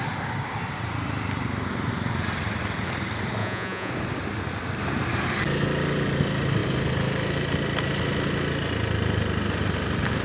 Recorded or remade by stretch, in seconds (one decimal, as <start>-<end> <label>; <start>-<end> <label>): 0.0-3.4 recorded; 3.4-3.9 remade; 3.9-10.2 recorded